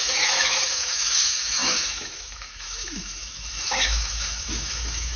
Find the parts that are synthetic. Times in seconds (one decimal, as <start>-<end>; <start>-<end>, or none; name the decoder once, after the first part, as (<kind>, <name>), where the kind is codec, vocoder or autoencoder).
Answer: 0.0-5.2 (autoencoder, DAC-VAE)